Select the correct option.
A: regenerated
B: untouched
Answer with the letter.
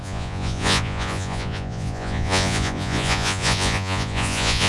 A